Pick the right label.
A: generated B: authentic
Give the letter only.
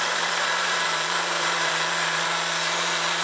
A